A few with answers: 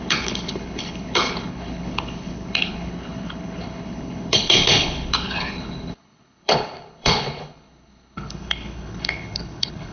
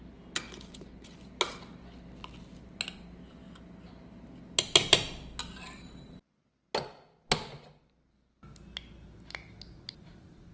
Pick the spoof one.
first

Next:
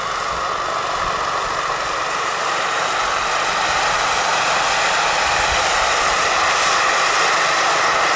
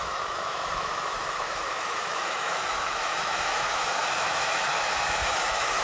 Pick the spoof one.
second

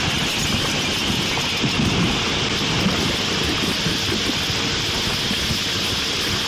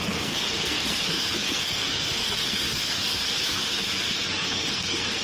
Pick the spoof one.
second